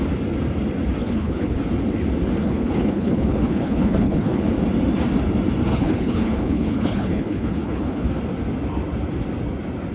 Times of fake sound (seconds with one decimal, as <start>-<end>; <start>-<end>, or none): 1.0-1.6; 2.4-4.4; 5.7-8.1